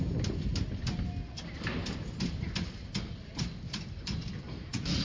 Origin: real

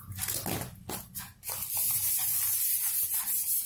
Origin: real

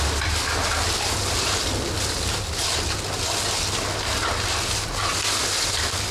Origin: real